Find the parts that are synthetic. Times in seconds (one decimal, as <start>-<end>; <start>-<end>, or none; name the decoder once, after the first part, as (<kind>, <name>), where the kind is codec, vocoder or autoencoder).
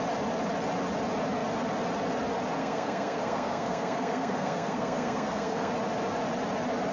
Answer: 2.6-5.7 (codec, SNAC)